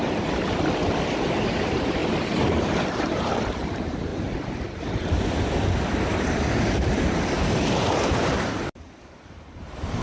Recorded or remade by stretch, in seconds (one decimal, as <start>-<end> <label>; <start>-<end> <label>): 0.0-1.1 recorded; 1.1-2.0 remade; 2.0-3.0 recorded; 3.0-4.1 remade; 4.1-6.2 recorded; 6.2-10.0 remade